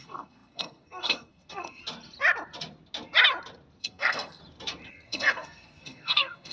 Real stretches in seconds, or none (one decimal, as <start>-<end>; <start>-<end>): 1.8-3.8; 4.4-4.9